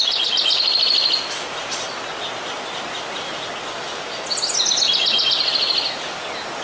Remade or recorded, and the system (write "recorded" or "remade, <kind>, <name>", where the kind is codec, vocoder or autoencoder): recorded